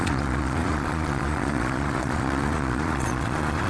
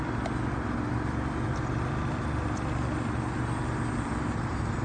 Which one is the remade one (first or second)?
first